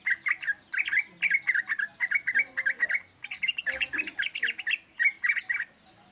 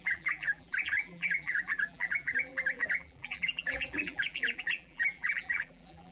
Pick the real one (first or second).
first